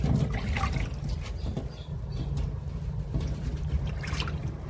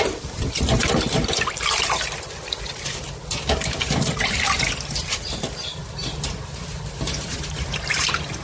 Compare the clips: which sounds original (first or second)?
first